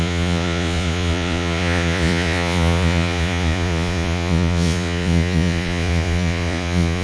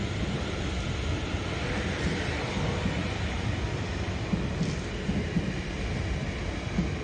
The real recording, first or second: second